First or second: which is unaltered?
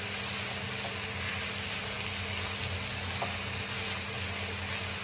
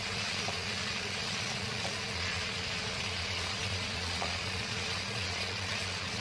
first